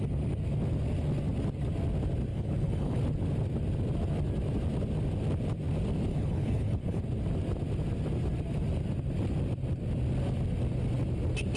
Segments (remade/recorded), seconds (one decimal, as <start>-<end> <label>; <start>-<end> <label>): 0.0-2.3 recorded; 2.3-3.0 remade; 3.0-6.1 recorded; 6.1-7.0 remade; 7.0-11.6 recorded